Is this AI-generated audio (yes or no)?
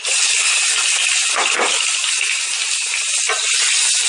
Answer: no